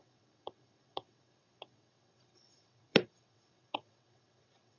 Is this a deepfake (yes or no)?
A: yes